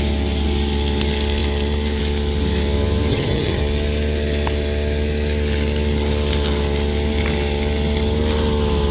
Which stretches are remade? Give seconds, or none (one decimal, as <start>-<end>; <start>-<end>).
3.1-3.6